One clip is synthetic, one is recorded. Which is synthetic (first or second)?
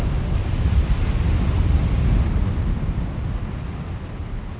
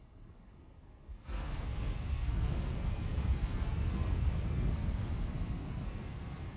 second